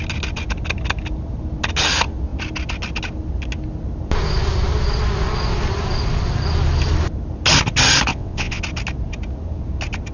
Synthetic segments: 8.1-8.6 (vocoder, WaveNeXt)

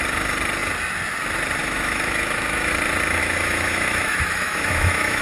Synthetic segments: 1.6-2.7 (autoencoder, DAC-VAE); 3.2-5.2